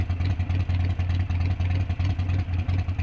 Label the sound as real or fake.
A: real